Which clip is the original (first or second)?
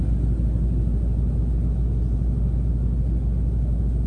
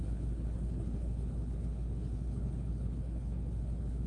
first